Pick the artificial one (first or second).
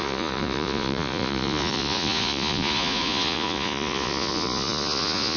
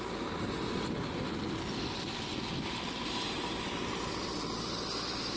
first